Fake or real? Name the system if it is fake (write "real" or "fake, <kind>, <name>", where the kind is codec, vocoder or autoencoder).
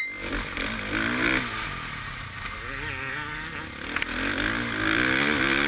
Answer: real